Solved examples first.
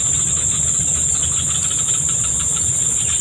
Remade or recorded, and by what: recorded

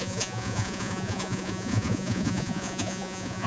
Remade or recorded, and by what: remade, vocoder, Vocos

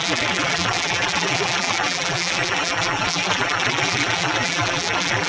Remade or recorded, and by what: remade, vocoder, BigVGAN v2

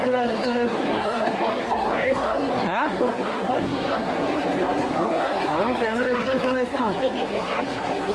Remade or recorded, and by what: remade, codec, SNAC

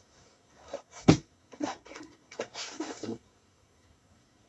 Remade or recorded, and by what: remade, codec, SNAC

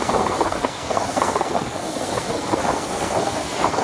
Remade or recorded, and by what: remade, codec, SNAC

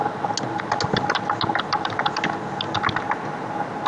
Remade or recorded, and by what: recorded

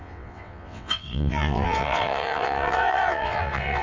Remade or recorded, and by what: remade, vocoder, WaveNeXt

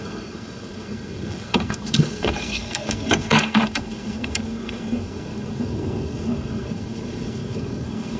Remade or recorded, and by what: remade, codec, SNAC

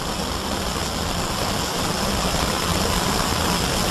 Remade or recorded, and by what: recorded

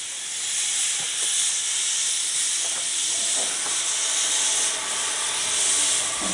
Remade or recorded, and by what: recorded